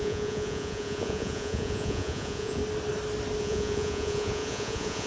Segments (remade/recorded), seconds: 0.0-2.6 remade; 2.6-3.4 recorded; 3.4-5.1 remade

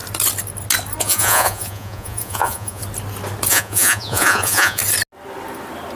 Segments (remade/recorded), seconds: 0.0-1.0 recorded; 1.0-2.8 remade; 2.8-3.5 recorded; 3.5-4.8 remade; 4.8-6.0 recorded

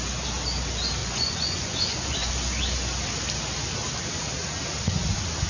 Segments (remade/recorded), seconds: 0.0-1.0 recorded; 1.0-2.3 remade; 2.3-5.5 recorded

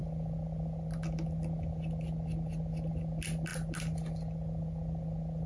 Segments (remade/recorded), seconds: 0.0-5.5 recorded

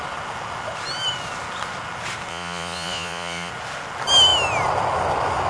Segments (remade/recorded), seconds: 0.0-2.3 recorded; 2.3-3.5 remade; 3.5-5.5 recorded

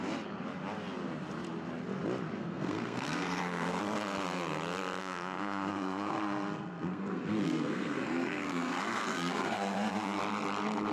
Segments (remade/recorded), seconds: 0.0-2.4 recorded; 2.4-3.8 remade; 3.8-5.0 recorded; 5.0-10.2 remade; 10.2-10.9 recorded

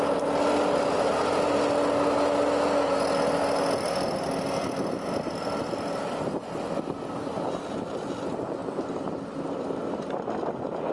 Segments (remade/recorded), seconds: 0.0-10.9 recorded